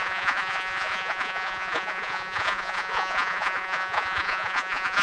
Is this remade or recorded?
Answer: remade